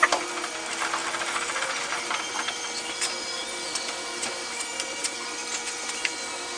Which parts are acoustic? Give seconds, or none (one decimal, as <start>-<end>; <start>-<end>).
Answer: 0.0-6.6